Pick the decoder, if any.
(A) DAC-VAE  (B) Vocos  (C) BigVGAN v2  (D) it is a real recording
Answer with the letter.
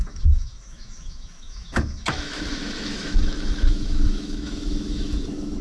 A